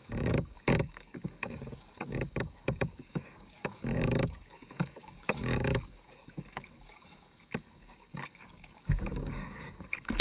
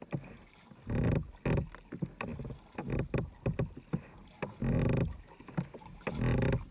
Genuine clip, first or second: second